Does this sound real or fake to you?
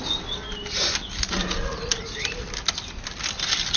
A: real